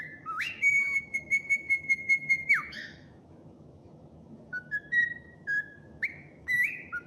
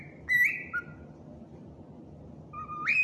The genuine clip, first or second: second